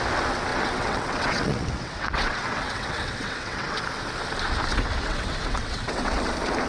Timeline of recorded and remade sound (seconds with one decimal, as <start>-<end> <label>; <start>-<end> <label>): 0.0-0.5 recorded; 0.5-3.8 remade; 3.8-4.7 recorded; 4.7-6.2 remade; 6.2-6.7 recorded